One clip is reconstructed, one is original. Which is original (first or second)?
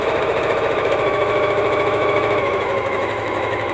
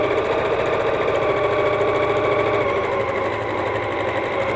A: second